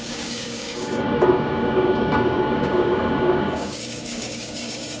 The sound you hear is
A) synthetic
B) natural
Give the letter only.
A